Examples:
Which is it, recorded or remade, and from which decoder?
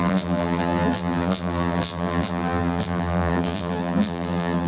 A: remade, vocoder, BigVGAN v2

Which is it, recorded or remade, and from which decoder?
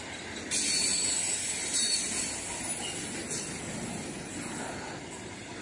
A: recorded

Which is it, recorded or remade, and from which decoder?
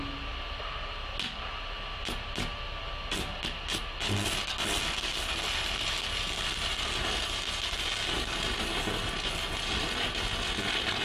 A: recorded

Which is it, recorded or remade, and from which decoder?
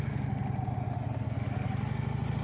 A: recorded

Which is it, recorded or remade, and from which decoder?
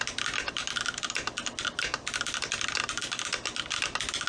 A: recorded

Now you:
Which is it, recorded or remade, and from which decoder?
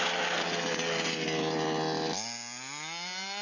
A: recorded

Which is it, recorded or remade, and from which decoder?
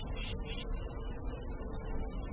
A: recorded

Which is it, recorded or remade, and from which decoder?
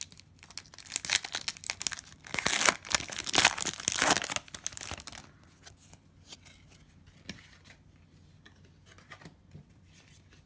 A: recorded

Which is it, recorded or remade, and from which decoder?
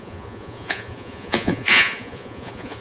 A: remade, vocoder, Vocos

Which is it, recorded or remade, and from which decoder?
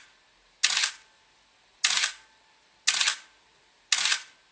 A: recorded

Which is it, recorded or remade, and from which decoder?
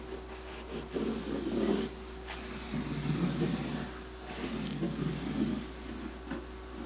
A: recorded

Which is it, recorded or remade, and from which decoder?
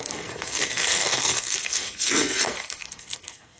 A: remade, codec, SNAC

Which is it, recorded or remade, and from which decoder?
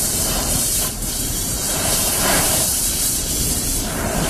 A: remade, vocoder, BigVGAN v2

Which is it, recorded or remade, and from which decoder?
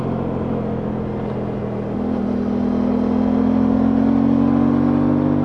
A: recorded